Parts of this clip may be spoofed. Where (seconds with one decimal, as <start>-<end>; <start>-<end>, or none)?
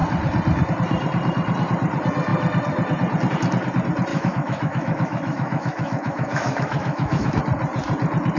4.1-7.4